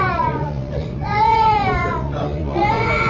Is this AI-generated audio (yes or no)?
yes